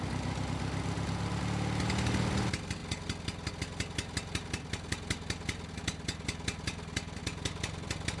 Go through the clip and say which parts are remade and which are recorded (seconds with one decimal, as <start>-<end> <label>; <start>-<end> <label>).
0.0-8.2 recorded